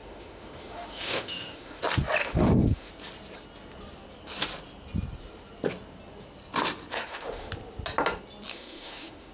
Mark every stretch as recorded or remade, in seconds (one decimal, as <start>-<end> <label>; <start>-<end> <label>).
0.0-1.8 remade; 1.8-2.2 recorded; 2.2-2.9 remade; 2.9-6.9 recorded; 6.9-7.5 remade; 7.5-8.5 recorded; 8.5-9.3 remade